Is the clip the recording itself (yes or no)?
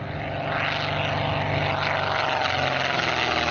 yes